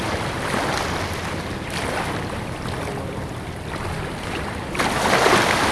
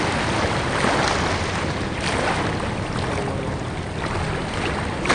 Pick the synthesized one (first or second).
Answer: first